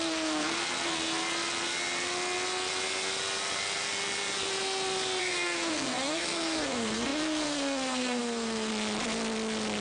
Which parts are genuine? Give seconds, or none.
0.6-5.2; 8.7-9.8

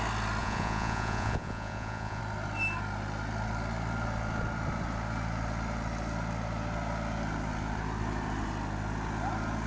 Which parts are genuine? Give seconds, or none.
0.0-0.4; 2.2-9.7

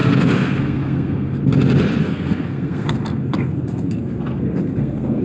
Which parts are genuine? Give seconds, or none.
1.4-2.0

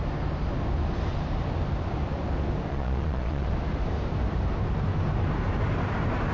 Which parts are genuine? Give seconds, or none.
0.0-2.7; 3.5-6.3

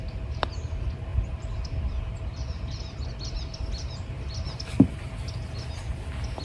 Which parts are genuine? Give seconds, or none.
0.0-1.1; 4.9-6.4